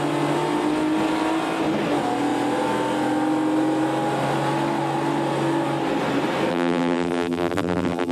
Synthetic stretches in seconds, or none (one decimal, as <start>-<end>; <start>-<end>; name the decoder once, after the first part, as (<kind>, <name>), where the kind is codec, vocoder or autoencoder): 6.5-8.1 (vocoder, BigVGAN v2)